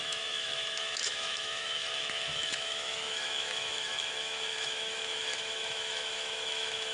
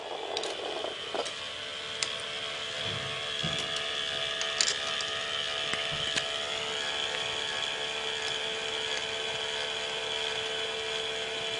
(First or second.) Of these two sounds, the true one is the second